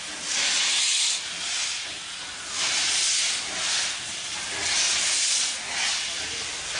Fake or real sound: real